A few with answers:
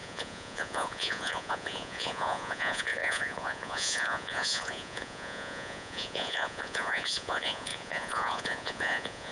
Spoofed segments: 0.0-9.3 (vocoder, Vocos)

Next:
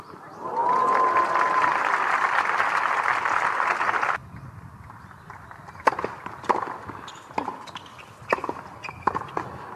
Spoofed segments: 0.6-3.2 (vocoder, BigVGAN v2); 4.2-7.7

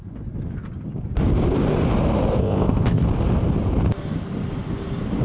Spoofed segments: 2.4-3.0 (codec, ZipCodec)

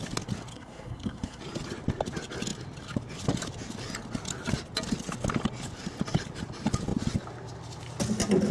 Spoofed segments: 0.5-1.4 (codec, SNAC)

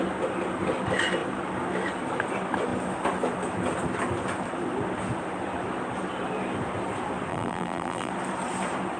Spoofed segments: 7.3-8.1 (vocoder, BigVGAN v2)

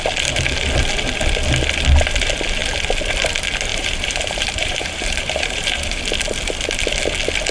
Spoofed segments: 3.7-6.0 (vocoder, BigVGAN v2)

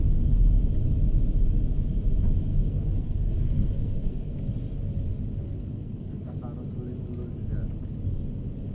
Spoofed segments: 2.5-4.4 (codec, SNAC); 5.4-6.4